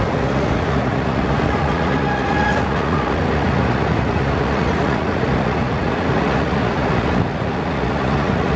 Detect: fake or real fake